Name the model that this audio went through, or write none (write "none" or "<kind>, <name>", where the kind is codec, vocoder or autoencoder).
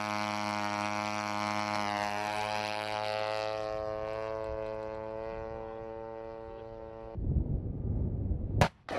none